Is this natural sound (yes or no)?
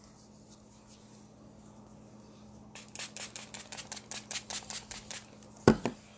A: yes